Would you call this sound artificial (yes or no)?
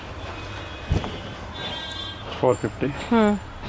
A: no